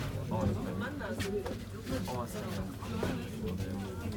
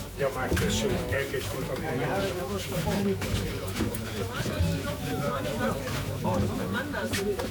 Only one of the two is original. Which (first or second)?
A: first